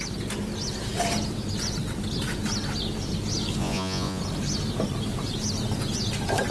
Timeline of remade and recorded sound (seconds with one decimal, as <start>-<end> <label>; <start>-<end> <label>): 0.0-3.6 recorded; 3.6-4.2 remade; 4.2-6.5 recorded